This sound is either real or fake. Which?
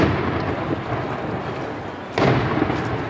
real